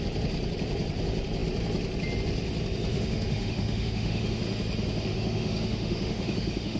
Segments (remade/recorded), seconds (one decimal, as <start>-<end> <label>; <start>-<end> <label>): 0.0-2.9 recorded; 2.9-4.4 remade; 4.4-5.1 recorded; 5.1-6.8 remade